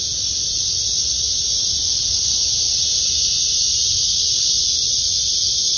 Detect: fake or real fake